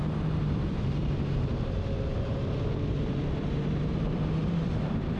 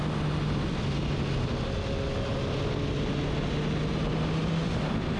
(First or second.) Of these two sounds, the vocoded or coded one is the first